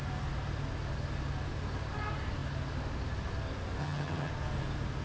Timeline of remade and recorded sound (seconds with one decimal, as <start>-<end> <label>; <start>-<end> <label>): 0.0-3.8 recorded; 3.8-4.3 remade; 4.3-5.0 recorded